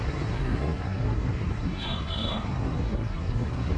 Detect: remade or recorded remade